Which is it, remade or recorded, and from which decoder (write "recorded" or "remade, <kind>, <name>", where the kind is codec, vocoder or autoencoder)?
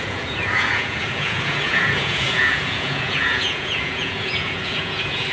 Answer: remade, vocoder, Vocos